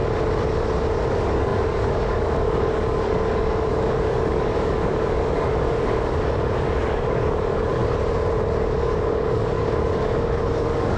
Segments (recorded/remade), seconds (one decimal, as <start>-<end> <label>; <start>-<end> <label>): 0.0-1.1 recorded; 1.1-7.8 remade; 7.8-8.6 recorded; 8.6-11.0 remade